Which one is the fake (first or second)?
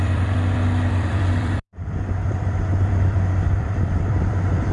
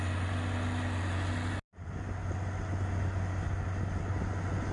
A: first